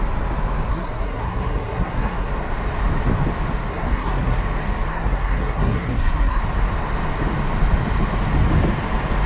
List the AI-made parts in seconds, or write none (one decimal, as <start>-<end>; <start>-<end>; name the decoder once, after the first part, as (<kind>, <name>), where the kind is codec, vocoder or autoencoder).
0.7-2.3 (codec, SNAC); 3.7-4.4; 4.9-6.4